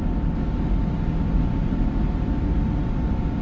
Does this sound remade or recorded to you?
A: recorded